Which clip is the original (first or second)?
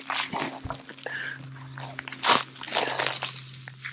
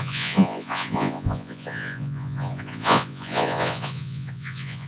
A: first